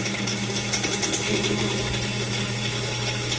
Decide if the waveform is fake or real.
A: real